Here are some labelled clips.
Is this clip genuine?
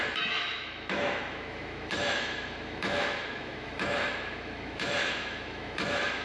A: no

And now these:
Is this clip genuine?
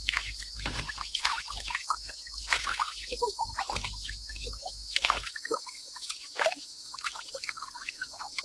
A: no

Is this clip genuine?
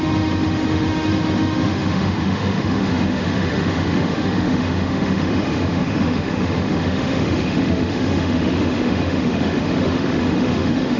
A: no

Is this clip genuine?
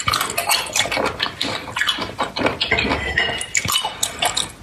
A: yes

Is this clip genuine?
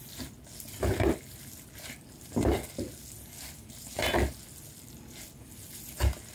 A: yes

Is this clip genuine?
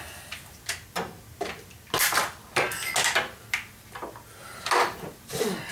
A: yes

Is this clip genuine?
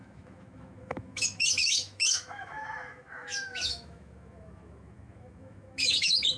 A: no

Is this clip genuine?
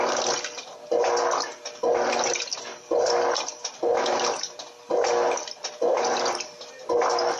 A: yes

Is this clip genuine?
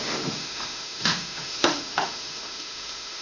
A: no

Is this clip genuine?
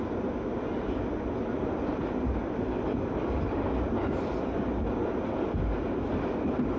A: yes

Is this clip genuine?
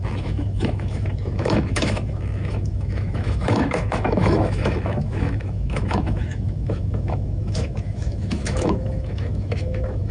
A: no